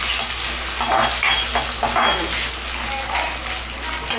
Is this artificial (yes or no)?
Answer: no